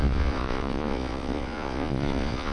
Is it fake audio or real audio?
fake